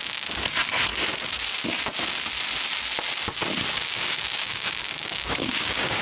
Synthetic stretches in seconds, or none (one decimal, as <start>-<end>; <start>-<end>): 3.7-6.0